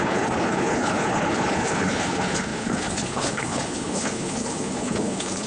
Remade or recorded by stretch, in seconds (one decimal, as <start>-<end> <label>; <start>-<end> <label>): 0.0-5.5 remade

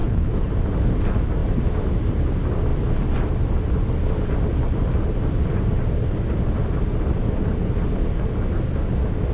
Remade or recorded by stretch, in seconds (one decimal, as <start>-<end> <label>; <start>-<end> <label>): 0.0-0.5 remade; 0.5-9.3 recorded

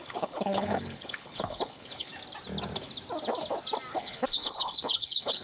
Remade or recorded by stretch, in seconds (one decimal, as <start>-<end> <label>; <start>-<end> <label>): 0.0-2.1 remade; 2.1-3.9 recorded; 3.9-5.4 remade

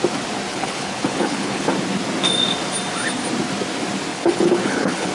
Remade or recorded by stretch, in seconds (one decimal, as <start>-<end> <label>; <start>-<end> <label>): 0.0-0.5 recorded; 0.5-1.7 remade; 1.7-4.1 recorded; 4.1-5.1 remade

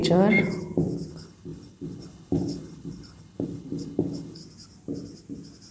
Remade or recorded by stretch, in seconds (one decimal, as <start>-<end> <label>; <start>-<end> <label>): 0.0-1.1 recorded; 1.1-4.4 remade; 4.4-5.7 recorded

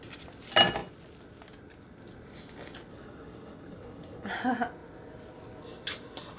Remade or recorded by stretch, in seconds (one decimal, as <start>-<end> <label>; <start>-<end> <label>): 0.0-2.9 recorded; 2.9-4.3 remade; 4.3-6.4 recorded

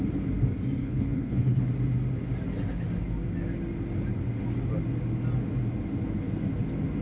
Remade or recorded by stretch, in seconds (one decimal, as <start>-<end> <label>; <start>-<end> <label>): 0.0-0.8 recorded; 0.8-1.7 remade; 1.7-7.0 recorded

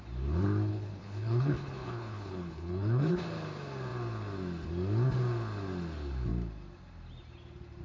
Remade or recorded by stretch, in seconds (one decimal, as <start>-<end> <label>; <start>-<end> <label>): 0.0-0.7 recorded; 0.7-3.1 remade; 3.1-7.8 recorded